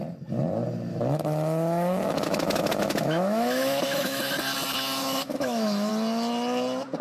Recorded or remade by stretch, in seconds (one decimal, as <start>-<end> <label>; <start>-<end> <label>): 0.0-0.9 recorded; 0.9-4.2 remade; 4.2-5.0 recorded; 5.0-5.9 remade; 5.9-7.0 recorded